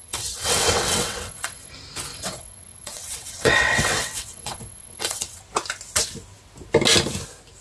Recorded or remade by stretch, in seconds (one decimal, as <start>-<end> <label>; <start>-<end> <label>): 0.0-1.7 remade; 1.7-2.1 recorded; 2.1-5.4 remade; 5.4-7.6 recorded